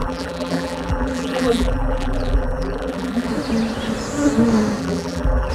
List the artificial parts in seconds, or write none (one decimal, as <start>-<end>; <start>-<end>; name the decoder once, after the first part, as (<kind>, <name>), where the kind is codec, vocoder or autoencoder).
0.0-3.3 (vocoder, BigVGAN v2); 4.8-5.5